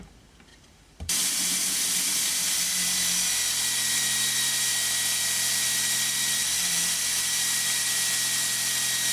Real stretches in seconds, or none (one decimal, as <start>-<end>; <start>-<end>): 0.0-0.5; 2.5-3.8; 4.7-5.5; 7.9-9.1